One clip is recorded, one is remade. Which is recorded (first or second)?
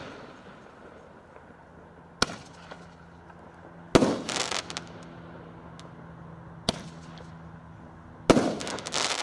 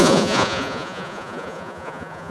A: first